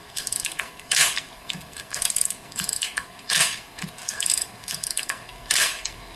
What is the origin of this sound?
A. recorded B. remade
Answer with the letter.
B